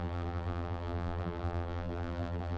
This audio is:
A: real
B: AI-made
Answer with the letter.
B